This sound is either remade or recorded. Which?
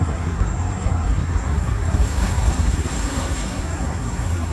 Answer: remade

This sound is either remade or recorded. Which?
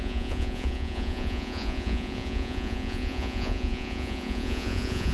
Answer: remade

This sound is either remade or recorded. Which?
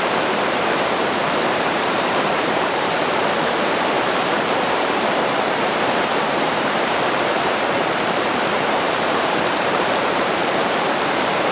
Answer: remade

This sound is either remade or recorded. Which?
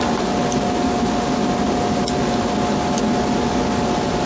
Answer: recorded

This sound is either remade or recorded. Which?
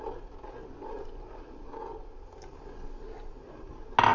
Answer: recorded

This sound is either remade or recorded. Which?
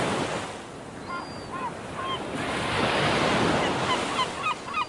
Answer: recorded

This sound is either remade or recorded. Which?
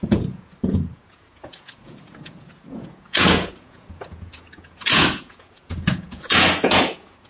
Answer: remade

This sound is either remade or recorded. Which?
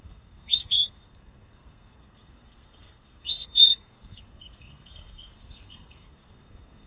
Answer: remade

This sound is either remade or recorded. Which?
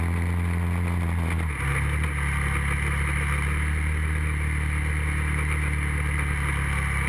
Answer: recorded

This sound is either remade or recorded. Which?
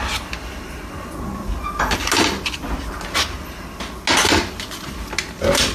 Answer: recorded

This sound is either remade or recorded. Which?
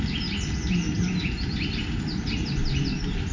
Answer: recorded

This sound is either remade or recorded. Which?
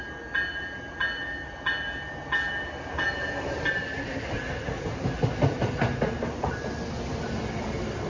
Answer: recorded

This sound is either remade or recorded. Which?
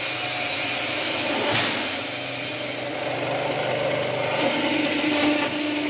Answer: recorded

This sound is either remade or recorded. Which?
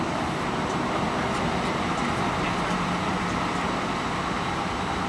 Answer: recorded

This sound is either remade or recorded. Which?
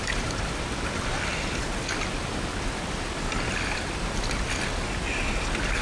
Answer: recorded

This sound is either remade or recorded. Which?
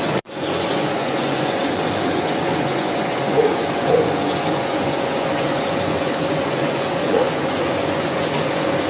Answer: remade